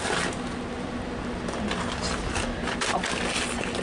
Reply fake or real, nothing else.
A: real